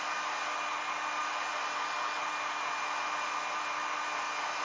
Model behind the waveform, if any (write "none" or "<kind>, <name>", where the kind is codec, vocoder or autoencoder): none